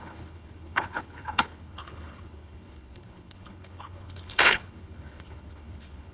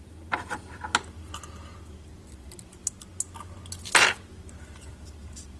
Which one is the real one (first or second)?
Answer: second